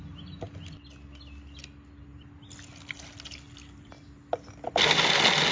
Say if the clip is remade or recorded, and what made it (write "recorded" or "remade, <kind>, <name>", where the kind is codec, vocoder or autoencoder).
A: recorded